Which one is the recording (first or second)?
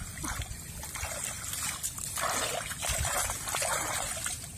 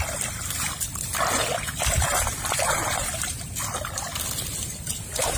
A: first